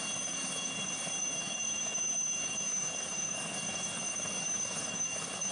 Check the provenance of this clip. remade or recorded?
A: remade